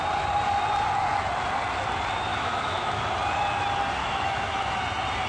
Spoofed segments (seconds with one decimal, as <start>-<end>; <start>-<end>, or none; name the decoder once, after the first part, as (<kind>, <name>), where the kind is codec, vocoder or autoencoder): 2.3-3.0 (autoencoder, DAC-VAE); 4.0-4.8